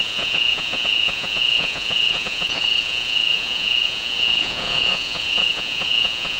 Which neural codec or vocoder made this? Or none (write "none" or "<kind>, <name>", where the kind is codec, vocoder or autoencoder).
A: vocoder, Vocos